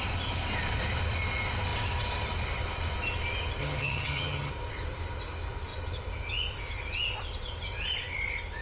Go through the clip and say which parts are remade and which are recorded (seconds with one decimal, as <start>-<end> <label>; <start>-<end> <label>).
0.0-3.6 recorded; 3.6-4.5 remade; 4.5-8.6 recorded